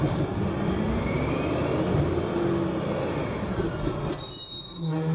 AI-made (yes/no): no